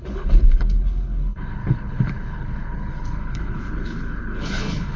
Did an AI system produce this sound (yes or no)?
yes